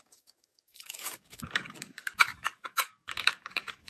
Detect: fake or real fake